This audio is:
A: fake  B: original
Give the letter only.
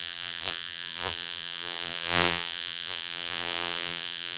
A